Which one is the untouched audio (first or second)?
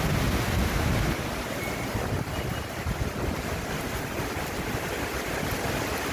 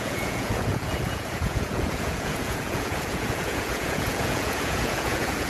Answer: first